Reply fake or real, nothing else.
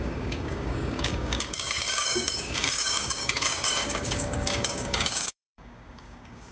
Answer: fake